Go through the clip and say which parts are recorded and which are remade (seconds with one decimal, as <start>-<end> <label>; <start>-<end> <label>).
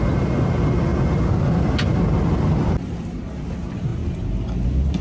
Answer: 0.0-5.0 recorded